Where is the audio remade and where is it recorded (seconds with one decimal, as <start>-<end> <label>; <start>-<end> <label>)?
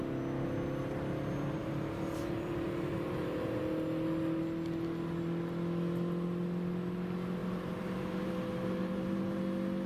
0.0-1.6 recorded; 1.6-3.6 remade; 3.6-7.4 recorded; 7.4-9.4 remade; 9.4-9.9 recorded